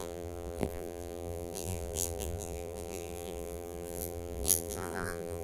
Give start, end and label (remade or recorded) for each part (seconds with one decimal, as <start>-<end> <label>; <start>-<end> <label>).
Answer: 0.0-5.4 remade